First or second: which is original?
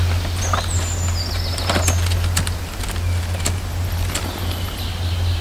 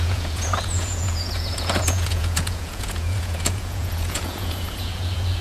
first